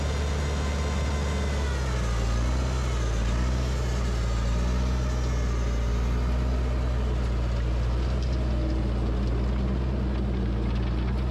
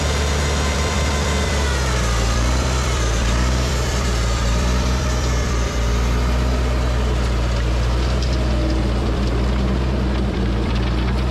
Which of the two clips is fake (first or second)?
second